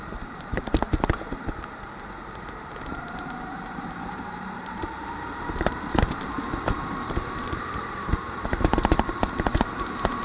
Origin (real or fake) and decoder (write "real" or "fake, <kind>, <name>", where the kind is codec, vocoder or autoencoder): fake, vocoder, BigVGAN v2